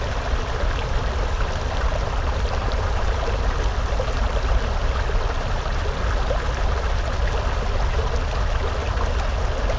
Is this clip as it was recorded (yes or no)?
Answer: yes